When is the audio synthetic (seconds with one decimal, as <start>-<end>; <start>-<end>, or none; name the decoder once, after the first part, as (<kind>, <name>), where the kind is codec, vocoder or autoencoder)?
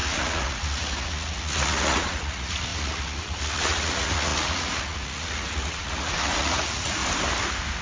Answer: 0.0-7.0 (vocoder, Vocos)